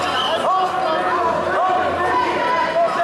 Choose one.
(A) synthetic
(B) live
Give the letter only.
B